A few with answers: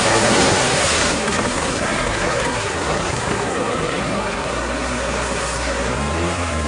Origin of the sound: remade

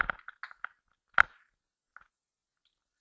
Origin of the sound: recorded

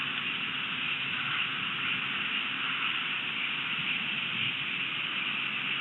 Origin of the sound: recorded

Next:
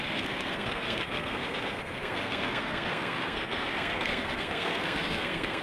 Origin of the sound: remade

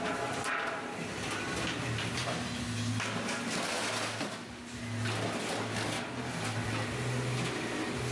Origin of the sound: recorded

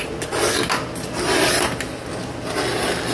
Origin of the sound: recorded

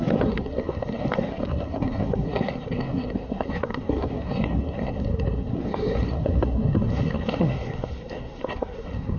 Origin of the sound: remade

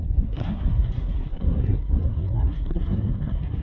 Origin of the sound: remade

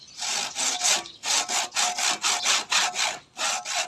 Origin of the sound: recorded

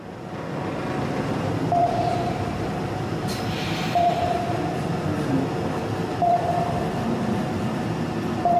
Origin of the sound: recorded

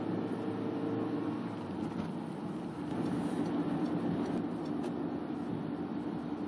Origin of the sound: recorded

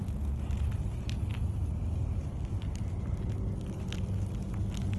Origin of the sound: recorded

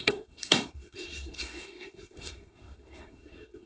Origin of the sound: remade